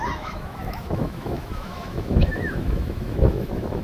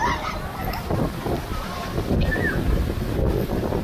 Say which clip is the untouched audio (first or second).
second